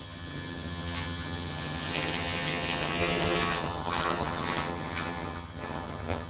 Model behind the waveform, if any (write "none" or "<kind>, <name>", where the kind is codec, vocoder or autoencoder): vocoder, HiFi-GAN